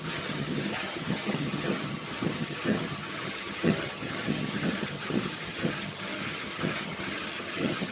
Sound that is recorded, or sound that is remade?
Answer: remade